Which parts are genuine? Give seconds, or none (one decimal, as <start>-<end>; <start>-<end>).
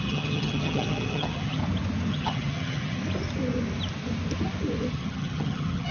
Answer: 1.6-2.1; 3.0-4.9